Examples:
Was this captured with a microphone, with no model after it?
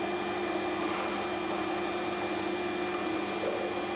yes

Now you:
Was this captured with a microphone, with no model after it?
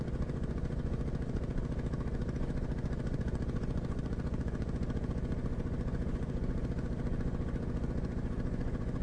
no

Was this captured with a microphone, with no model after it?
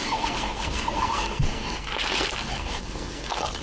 no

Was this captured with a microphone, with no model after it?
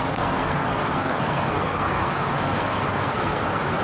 no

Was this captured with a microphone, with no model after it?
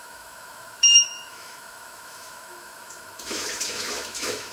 no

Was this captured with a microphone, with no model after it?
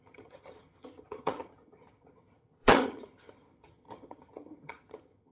no